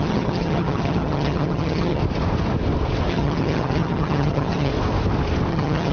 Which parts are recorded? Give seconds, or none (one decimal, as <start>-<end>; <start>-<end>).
2.0-3.1; 4.7-5.5

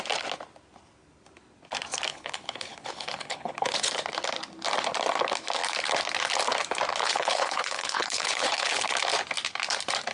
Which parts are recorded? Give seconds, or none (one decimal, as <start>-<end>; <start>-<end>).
0.0-2.1; 4.0-7.0; 8.9-10.1

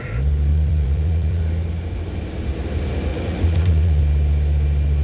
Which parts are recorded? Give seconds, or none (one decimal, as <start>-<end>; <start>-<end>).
0.0-0.5; 1.4-3.1; 4.0-5.0

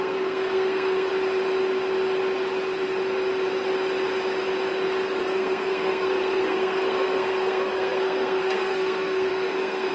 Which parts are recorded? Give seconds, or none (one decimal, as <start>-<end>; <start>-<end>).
1.1-5.2

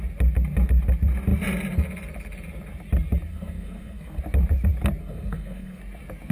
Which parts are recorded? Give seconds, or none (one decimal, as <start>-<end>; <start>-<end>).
0.0-3.3; 4.2-5.0; 5.8-6.3

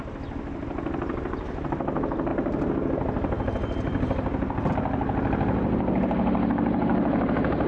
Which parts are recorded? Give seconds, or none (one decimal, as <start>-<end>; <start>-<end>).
0.0-7.7